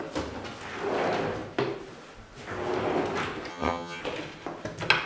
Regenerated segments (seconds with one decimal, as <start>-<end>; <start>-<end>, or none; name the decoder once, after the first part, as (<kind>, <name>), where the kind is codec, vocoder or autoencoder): 3.5-4.0 (vocoder, HiFi-GAN)

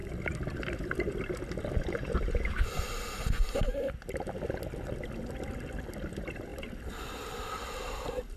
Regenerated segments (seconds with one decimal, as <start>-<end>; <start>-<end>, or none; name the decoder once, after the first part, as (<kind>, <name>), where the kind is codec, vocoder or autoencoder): none

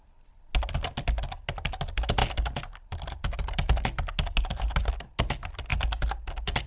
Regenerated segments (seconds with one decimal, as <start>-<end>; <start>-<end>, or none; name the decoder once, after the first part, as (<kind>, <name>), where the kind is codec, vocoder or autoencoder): none

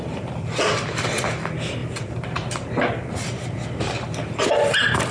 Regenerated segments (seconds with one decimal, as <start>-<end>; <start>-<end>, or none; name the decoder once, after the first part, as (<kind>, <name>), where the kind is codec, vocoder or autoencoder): none

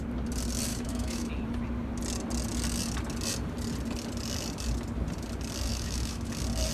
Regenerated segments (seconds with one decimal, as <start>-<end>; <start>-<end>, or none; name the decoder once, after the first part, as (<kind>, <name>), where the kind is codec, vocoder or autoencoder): 0.7-1.3 (autoencoder, DAC-VAE); 5.7-6.3

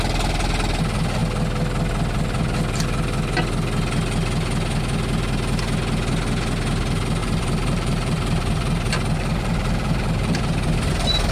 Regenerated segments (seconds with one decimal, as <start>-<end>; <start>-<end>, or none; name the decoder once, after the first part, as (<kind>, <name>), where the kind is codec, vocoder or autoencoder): 7.2-10.9 (vocoder, BigVGAN v2)

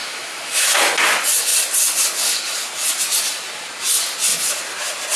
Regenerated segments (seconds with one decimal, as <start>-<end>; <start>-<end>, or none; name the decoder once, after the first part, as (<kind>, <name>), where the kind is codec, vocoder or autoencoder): 0.0-0.8 (autoencoder, DAC-VAE)